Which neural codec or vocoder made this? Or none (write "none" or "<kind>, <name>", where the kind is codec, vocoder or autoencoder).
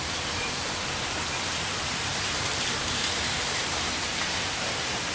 vocoder, BigVGAN v2